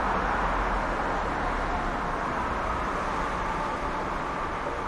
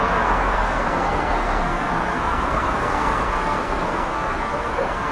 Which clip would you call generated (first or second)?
second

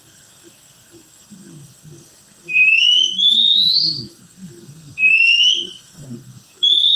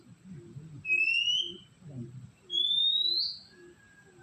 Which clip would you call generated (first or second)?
first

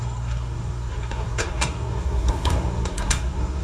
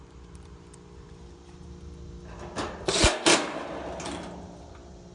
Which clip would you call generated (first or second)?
first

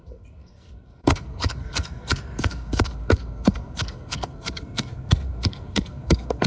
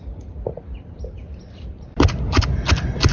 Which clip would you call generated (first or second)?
first